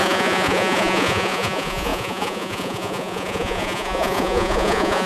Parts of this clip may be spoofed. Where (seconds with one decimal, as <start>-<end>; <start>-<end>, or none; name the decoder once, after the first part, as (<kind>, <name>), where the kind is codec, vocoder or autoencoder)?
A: 0.0-5.1 (vocoder, Vocos)